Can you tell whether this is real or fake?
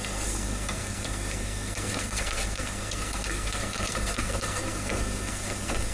fake